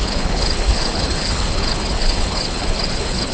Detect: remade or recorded remade